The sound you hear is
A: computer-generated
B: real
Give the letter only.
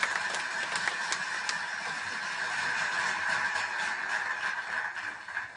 B